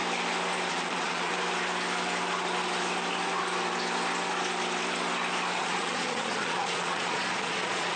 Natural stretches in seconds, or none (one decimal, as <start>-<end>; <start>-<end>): 0.0-0.7; 1.3-5.6